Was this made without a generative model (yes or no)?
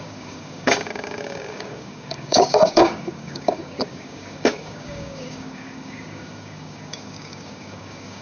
no